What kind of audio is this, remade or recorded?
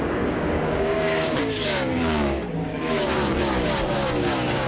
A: remade